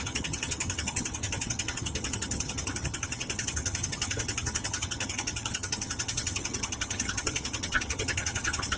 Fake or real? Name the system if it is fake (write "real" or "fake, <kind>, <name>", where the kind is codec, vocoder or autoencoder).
fake, vocoder, HiFi-GAN